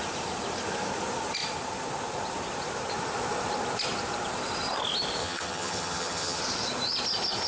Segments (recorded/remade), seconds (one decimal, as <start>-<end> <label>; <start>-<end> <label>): 0.0-5.2 recorded; 5.2-6.4 remade; 6.4-7.5 recorded